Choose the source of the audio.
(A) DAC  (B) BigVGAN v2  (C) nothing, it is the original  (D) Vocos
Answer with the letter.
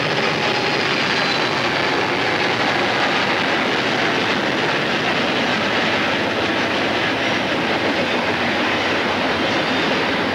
C